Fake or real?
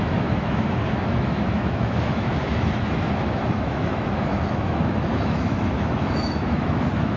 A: fake